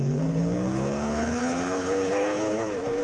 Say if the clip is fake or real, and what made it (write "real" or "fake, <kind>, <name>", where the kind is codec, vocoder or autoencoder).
fake, codec, HILCodec